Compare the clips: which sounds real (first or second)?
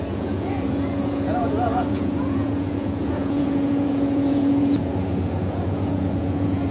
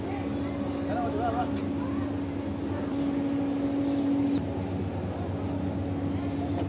second